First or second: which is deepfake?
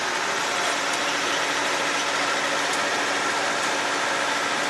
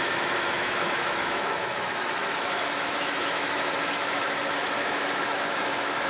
second